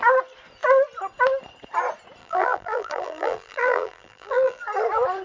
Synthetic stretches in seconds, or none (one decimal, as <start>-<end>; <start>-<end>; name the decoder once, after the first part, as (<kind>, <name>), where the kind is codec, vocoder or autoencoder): 2.2-4.6 (vocoder, BigVGAN v2)